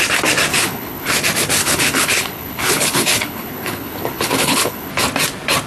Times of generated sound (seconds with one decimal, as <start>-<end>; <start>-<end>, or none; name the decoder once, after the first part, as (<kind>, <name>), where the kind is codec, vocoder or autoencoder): 0.5-1.1 (codec, HILCodec); 1.6-4.9